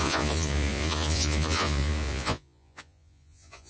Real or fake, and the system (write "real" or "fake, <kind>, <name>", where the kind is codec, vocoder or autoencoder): fake, vocoder, Vocos